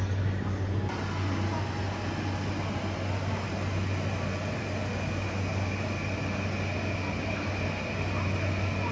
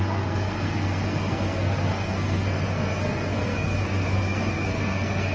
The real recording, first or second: first